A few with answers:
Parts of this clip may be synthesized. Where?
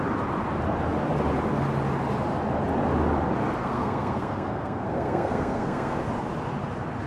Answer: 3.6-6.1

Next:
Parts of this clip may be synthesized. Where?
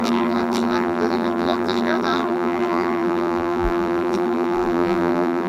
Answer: 0.0-5.5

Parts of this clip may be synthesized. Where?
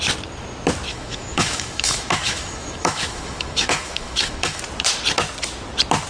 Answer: 0.9-4.6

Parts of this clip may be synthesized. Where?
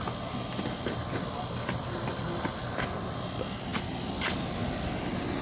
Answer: 0.5-2.6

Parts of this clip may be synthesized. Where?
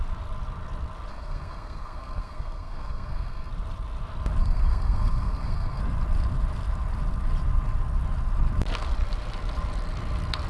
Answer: 1.1-3.5; 4.4-5.8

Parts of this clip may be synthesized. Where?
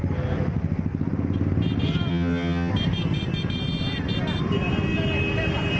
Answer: 2.1-2.7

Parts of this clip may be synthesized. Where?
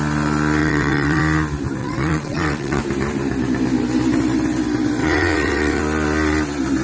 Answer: 0.6-1.2; 1.8-2.8; 5.0-5.8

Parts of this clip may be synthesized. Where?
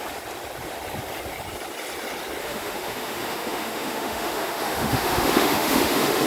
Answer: 2.4-6.3